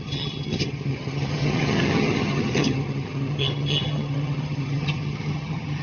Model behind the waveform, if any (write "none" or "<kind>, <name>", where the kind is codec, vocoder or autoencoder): vocoder, HiFi-GAN